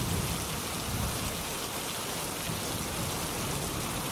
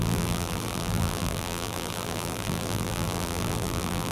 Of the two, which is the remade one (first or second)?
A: second